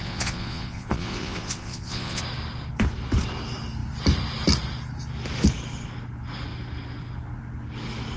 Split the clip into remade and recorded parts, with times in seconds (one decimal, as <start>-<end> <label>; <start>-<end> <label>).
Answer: 0.0-2.2 remade; 2.2-8.2 recorded

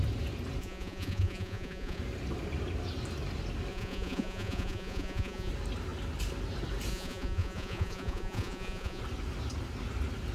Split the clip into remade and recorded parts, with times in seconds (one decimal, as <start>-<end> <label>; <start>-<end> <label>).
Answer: 0.0-0.6 recorded; 0.6-2.0 remade; 2.0-3.7 recorded; 3.7-5.5 remade; 5.5-6.9 recorded; 6.9-9.0 remade; 9.0-10.3 recorded

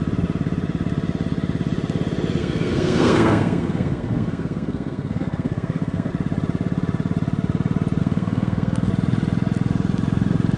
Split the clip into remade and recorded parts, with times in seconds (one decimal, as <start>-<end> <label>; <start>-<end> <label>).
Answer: 0.0-2.4 recorded; 2.4-6.1 remade; 6.1-8.0 recorded; 8.0-8.9 remade; 8.9-10.6 recorded

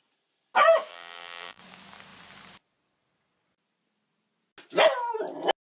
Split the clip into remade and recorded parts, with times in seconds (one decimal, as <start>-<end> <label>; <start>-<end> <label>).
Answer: 0.0-0.9 recorded; 0.9-1.6 remade; 1.6-5.7 recorded

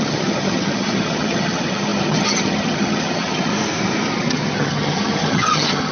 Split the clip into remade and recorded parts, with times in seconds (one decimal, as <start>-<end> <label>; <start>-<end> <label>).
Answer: 0.0-3.5 remade; 3.5-4.1 recorded; 4.1-5.9 remade

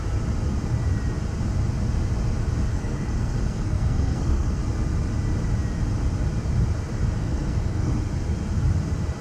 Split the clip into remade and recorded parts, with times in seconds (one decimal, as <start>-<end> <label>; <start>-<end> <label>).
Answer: 0.0-2.7 recorded; 2.7-4.6 remade; 4.6-7.2 recorded; 7.2-8.0 remade; 8.0-9.2 recorded

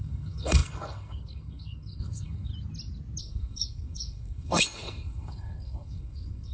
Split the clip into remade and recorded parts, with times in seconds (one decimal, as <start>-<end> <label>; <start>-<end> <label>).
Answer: 0.0-2.5 remade; 2.5-3.2 recorded; 3.2-6.5 remade